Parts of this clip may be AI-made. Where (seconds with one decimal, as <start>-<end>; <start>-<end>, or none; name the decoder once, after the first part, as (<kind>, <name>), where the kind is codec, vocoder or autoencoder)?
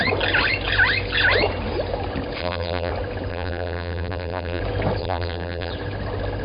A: 2.4-2.9 (vocoder, BigVGAN v2); 3.3-4.6; 5.0-5.7